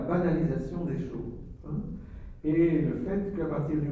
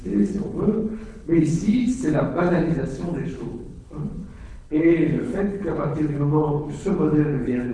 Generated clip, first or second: second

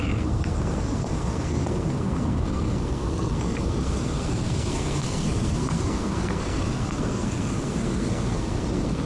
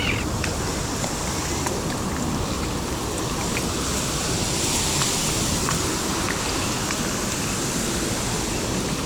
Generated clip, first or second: first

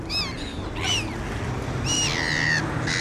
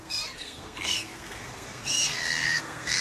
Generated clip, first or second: second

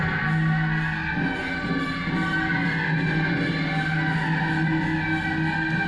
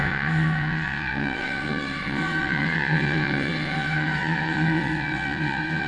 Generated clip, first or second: second